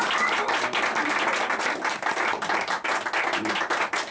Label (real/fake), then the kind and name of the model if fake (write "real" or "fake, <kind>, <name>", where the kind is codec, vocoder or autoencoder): real